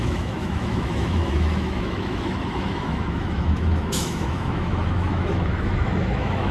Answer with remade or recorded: remade